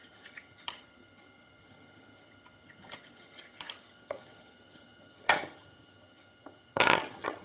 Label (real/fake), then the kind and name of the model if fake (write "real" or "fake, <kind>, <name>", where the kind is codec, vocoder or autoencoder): fake, vocoder, HiFi-GAN